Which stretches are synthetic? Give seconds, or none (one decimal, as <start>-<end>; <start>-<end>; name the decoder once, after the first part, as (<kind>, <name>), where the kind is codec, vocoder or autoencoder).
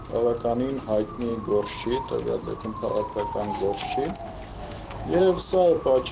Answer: 4.6-5.2 (autoencoder, DAC-VAE)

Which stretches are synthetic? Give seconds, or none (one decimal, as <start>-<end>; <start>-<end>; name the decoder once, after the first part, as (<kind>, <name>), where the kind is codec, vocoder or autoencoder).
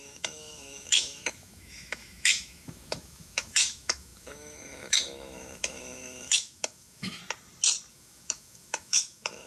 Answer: 0.0-7.2 (autoencoder, DAC-VAE); 7.9-9.5